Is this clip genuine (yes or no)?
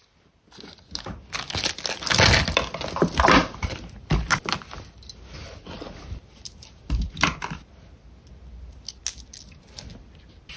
yes